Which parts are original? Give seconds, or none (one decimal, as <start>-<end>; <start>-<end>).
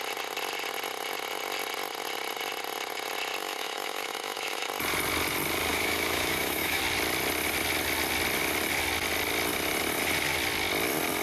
0.0-3.4; 4.7-5.7; 6.8-11.2